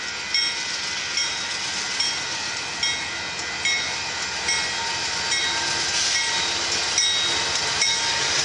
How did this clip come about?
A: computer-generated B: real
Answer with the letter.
B